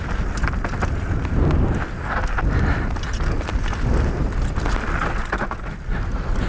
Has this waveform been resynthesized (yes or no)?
no